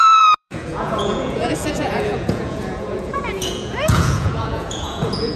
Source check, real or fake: fake